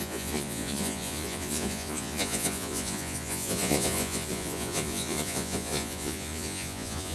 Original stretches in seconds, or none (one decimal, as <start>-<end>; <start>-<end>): none